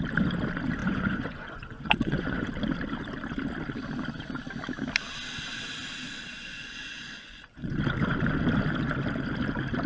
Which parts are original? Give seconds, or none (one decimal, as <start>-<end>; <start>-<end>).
0.0-0.8; 2.5-6.4; 7.7-9.9